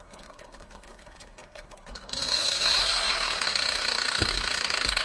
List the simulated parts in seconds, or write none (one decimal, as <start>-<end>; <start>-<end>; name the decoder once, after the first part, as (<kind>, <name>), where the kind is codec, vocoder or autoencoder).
0.0-5.0 (codec, SNAC)